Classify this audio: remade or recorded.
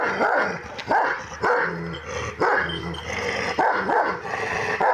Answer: recorded